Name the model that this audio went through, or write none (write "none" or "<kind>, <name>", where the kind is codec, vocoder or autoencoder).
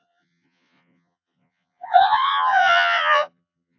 vocoder, Vocos